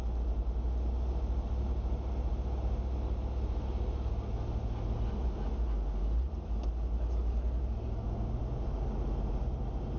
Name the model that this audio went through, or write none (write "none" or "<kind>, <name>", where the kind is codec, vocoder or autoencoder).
none